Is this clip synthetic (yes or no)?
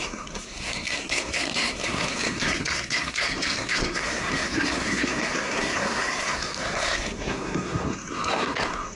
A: yes